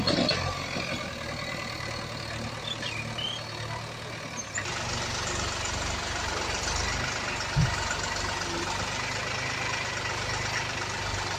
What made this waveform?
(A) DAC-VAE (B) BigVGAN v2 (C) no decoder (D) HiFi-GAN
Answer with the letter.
C